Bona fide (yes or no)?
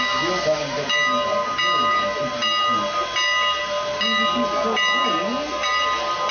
yes